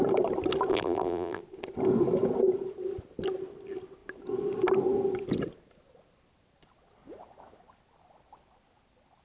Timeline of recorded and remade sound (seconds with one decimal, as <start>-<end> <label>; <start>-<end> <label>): 0.0-0.7 recorded; 0.7-1.4 remade; 1.4-9.2 recorded